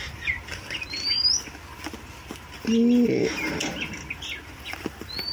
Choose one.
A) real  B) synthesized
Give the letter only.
A